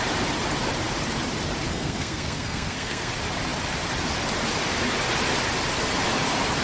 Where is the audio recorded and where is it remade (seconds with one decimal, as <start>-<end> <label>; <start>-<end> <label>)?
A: 0.0-1.7 recorded; 1.7-3.1 remade; 3.1-6.6 recorded